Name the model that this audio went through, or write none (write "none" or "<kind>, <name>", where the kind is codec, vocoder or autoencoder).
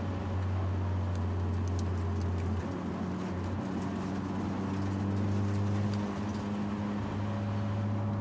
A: none